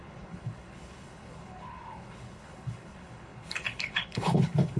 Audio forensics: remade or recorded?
remade